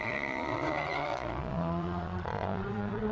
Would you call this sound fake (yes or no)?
yes